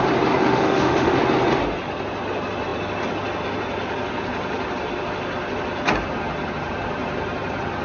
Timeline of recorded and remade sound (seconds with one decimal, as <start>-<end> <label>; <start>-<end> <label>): 0.0-0.4 recorded; 0.4-1.2 remade; 1.2-7.8 recorded